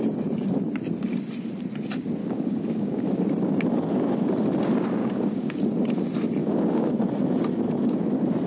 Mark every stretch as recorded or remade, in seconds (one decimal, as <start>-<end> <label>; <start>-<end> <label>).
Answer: 0.0-2.2 recorded; 2.2-3.0 remade; 3.0-5.0 recorded; 5.0-5.6 remade; 5.6-6.4 recorded; 6.4-6.9 remade; 6.9-8.5 recorded